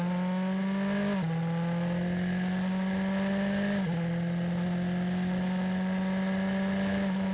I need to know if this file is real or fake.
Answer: real